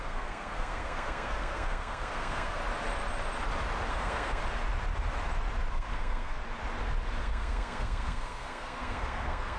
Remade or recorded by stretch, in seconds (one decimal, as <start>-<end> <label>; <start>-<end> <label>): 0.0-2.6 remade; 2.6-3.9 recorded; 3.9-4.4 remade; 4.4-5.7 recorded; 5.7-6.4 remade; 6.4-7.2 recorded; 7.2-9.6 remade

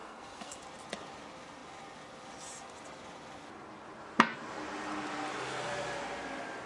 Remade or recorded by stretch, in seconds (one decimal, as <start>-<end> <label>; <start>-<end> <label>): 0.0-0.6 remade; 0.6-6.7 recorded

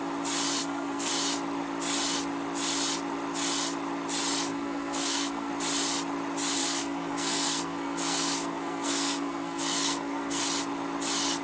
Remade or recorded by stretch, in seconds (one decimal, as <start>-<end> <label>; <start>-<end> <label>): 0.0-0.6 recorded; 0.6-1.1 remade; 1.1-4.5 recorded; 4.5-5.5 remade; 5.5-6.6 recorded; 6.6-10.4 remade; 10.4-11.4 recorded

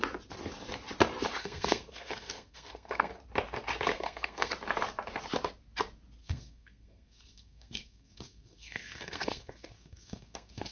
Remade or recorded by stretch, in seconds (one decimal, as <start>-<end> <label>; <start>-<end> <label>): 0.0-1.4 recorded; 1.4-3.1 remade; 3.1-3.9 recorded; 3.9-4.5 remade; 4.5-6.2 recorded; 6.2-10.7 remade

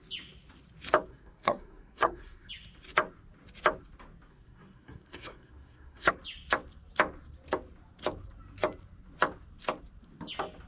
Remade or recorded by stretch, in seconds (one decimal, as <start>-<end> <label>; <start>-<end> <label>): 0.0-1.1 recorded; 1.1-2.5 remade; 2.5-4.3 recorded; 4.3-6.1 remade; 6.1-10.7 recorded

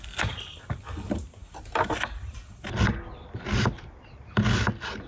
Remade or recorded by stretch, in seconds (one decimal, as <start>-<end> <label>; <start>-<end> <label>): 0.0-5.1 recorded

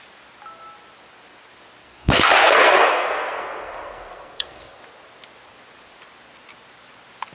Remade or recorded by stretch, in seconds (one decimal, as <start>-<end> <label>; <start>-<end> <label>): 0.0-1.8 recorded; 1.8-4.8 remade; 4.8-7.3 recorded

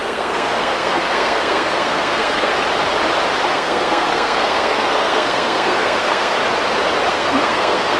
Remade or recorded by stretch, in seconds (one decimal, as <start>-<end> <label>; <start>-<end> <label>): 0.0-2.5 remade; 2.5-3.5 recorded; 3.5-6.4 remade; 6.4-7.1 recorded; 7.1-8.0 remade